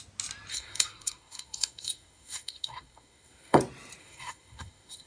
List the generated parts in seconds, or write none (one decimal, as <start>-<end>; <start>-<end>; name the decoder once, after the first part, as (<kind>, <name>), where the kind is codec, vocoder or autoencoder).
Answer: 0.5-3.6 (codec, SNAC); 4.0-5.1